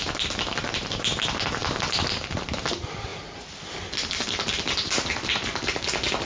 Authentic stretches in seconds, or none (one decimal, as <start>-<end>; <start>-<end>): 0.0-6.3